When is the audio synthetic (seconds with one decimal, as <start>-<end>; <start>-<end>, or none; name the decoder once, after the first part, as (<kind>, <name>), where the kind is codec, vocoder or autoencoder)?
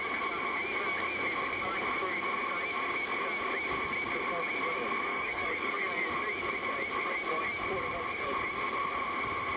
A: 5.1-6.1 (codec, DAC)